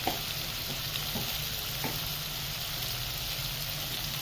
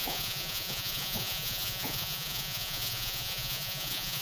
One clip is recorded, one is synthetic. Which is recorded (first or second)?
first